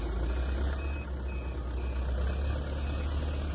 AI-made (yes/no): no